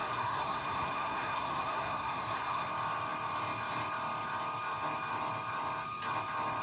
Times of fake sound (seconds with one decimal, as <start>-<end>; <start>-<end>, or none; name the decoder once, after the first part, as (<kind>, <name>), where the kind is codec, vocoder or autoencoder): 0.0-2.7 (codec, SNAC)